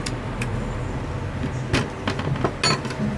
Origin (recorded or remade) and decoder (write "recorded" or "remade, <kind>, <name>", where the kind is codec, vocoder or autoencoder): recorded